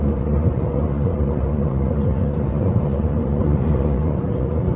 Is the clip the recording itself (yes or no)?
no